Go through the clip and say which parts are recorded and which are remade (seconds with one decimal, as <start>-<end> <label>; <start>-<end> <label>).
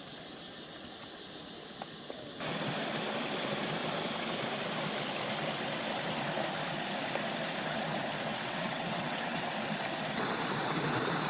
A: 0.0-8.3 recorded; 8.3-9.5 remade; 9.5-11.3 recorded